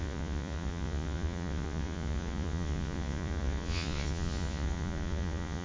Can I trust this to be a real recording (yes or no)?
no